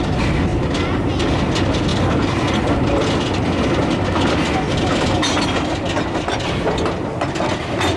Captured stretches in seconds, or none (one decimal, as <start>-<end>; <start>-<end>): 0.0-8.0